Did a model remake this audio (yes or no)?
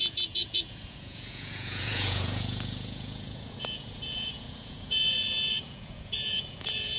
yes